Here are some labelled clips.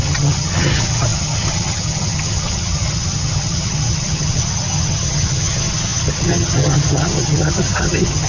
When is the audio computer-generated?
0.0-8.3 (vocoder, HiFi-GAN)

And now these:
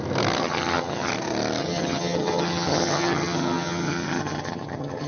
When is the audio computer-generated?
0.4-1.1 (vocoder, HiFi-GAN); 1.6-5.1

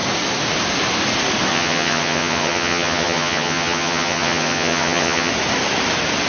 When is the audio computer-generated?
1.5-5.3 (vocoder, HiFi-GAN)

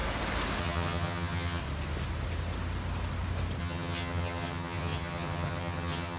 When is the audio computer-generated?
0.6-1.6 (vocoder, HiFi-GAN); 3.6-6.2

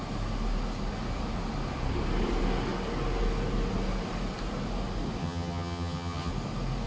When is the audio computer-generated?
5.2-6.3 (vocoder, HiFi-GAN)